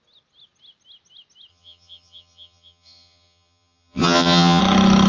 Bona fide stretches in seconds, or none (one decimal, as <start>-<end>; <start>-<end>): 0.0-1.5; 4.6-5.1